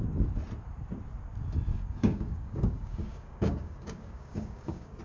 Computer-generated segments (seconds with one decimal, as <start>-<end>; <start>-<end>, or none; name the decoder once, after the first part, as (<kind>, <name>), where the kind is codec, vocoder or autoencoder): 1.7-5.0 (codec, DAC)